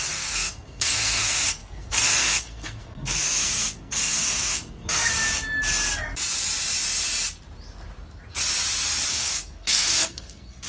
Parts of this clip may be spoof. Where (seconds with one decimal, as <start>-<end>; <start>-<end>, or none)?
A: 0.0-5.1; 9.1-10.7